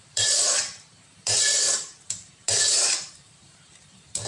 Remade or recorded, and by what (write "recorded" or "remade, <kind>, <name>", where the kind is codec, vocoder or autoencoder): remade, vocoder, BigVGAN v2